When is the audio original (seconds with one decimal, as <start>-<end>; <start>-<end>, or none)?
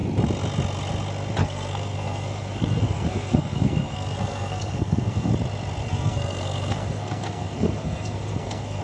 0.0-1.4; 5.3-5.8